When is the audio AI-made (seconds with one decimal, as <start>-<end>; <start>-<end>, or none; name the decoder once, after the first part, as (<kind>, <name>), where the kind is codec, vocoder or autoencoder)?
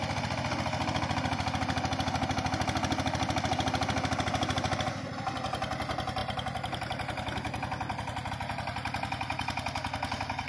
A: none